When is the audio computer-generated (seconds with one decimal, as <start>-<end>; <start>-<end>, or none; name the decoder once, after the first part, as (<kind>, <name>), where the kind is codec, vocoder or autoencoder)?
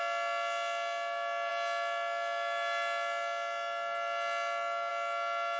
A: none